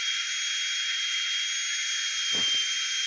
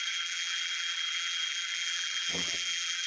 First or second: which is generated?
second